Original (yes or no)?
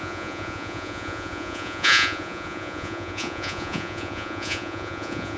no